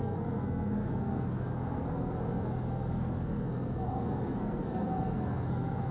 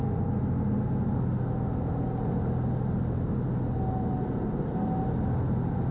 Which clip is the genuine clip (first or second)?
second